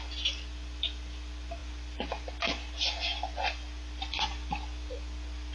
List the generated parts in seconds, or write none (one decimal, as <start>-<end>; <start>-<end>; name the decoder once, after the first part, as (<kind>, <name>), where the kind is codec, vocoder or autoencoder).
none